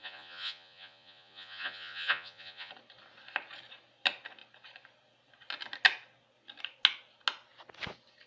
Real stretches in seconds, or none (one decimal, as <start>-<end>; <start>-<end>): 2.7-8.3